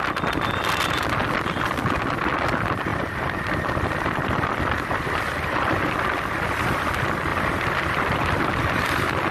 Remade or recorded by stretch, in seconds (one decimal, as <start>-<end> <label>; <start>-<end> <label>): 0.0-2.9 recorded; 2.9-6.0 remade; 6.0-7.3 recorded; 7.3-8.4 remade; 8.4-9.3 recorded